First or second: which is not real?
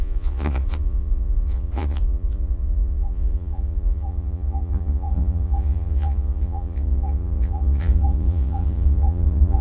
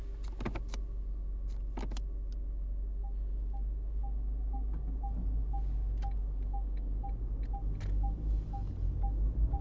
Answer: first